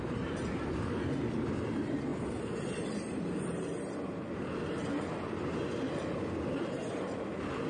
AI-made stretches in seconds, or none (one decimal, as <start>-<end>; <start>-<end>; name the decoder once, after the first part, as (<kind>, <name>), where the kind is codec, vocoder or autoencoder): none